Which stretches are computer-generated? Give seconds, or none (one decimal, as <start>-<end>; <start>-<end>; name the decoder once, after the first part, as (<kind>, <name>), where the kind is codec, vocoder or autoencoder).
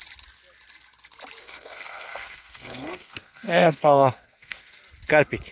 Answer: 1.4-4.7 (codec, SNAC)